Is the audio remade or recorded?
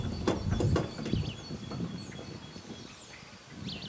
recorded